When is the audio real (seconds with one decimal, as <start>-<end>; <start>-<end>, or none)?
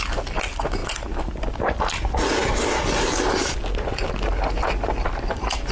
0.0-5.7